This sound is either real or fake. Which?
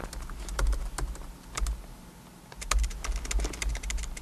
real